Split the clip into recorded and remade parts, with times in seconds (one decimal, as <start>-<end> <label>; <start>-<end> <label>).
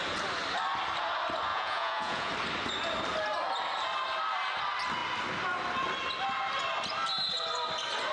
0.0-1.5 recorded; 1.5-2.3 remade; 2.3-8.1 recorded